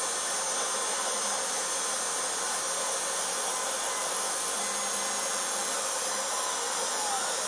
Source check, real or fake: real